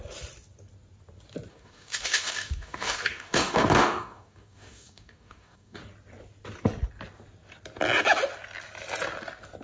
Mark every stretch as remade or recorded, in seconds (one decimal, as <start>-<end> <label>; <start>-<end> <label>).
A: 0.0-1.5 recorded; 1.5-5.8 remade; 5.8-9.6 recorded